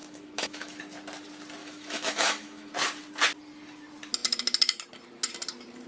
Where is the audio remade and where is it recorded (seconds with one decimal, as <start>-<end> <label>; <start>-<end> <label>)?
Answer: 0.0-0.8 remade; 0.8-1.6 recorded; 1.6-2.7 remade; 2.7-5.9 recorded

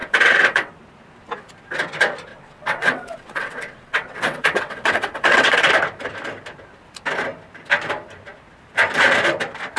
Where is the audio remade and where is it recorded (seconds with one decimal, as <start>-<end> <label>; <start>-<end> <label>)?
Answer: 0.0-0.7 remade; 0.7-2.3 recorded; 2.3-5.7 remade; 5.7-9.8 recorded

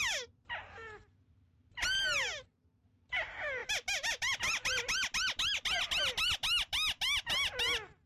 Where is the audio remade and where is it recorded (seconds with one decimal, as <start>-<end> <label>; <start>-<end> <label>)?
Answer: 0.0-8.1 recorded

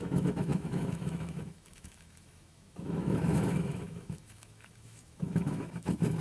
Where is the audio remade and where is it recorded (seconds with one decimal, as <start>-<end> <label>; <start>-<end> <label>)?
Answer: 0.0-6.2 remade

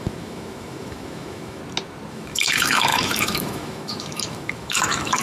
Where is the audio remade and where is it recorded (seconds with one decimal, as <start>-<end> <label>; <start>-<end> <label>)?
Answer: 0.0-1.6 remade; 1.6-2.1 recorded; 2.1-5.2 remade

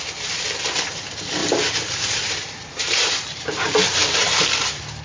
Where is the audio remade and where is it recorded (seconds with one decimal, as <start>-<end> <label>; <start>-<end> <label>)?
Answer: 0.0-1.4 recorded; 1.4-4.4 remade; 4.4-5.0 recorded

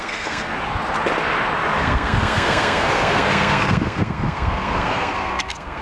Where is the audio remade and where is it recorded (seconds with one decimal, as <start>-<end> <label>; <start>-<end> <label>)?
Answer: 0.0-0.5 remade; 0.5-1.8 recorded; 1.8-5.8 remade

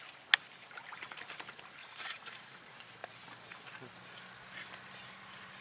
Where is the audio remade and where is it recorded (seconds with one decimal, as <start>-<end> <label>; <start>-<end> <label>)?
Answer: 0.0-1.8 recorded; 1.8-2.6 remade; 2.6-5.6 recorded